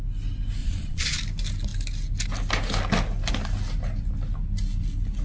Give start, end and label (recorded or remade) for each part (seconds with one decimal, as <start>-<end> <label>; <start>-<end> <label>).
0.0-0.6 recorded; 0.6-1.2 remade; 1.2-5.2 recorded